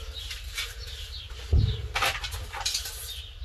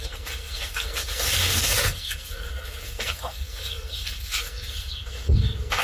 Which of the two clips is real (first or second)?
first